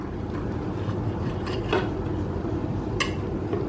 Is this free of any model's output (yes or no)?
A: yes